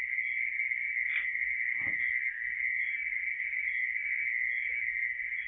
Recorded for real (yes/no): yes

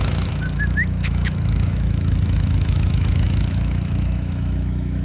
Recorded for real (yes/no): no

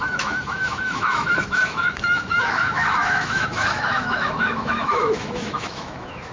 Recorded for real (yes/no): no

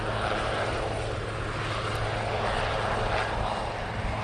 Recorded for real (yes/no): yes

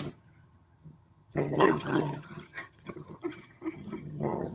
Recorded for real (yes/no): no